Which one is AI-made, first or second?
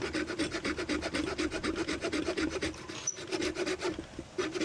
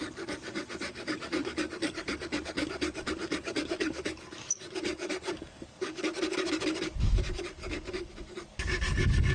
second